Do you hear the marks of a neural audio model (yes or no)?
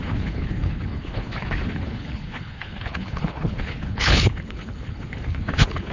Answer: yes